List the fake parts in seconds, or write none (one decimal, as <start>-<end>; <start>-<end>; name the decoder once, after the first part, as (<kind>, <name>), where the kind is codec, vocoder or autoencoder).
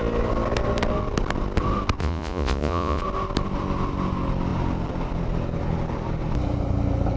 2.0-3.0 (vocoder, Vocos)